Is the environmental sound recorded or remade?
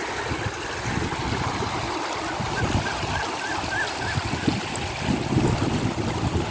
recorded